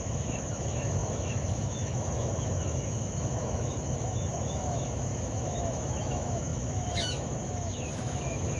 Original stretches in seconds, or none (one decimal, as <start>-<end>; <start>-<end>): none